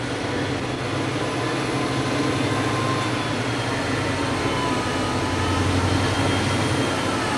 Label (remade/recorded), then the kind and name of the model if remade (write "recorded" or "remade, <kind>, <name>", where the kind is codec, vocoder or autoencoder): recorded